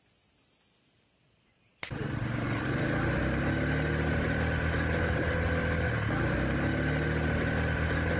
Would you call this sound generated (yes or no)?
no